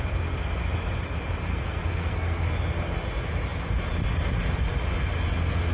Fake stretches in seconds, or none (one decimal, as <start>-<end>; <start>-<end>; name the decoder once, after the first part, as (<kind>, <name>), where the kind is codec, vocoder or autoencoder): 1.5-2.5 (codec, SNAC)